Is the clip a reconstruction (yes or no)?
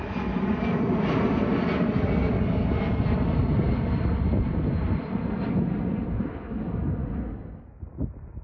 no